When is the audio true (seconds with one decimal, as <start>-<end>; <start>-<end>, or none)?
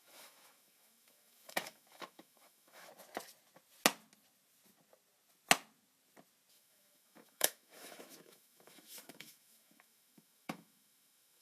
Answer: 2.9-6.5